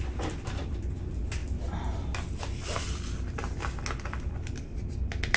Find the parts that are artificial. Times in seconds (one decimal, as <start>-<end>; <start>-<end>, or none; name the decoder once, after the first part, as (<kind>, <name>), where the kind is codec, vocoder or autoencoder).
0.0-1.4 (vocoder, BigVGAN v2); 4.6-5.4